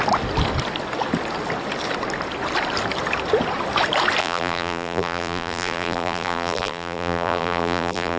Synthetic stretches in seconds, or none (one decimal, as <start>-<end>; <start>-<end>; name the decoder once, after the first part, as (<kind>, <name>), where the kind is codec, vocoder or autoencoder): 4.2-8.2 (vocoder, BigVGAN v2)